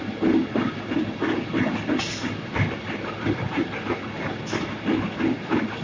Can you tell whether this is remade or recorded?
recorded